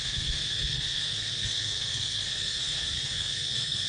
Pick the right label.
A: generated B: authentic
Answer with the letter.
A